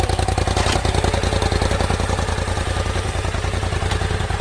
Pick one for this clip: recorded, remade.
recorded